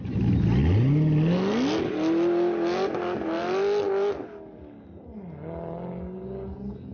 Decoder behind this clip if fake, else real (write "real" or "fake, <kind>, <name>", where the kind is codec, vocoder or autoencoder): real